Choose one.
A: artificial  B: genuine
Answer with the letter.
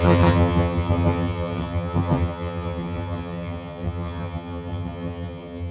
A